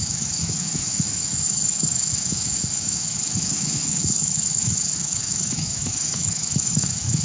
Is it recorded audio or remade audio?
remade